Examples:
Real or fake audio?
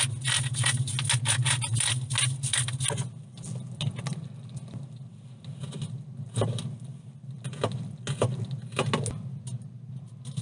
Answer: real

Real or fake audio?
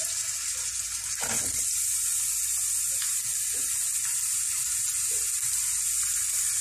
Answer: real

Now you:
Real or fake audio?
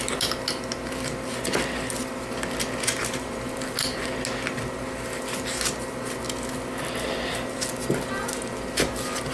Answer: real